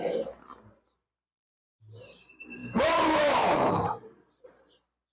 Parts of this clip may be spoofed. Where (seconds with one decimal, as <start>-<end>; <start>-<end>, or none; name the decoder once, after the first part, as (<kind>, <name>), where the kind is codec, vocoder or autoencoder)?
2.6-3.7 (vocoder, BigVGAN v2)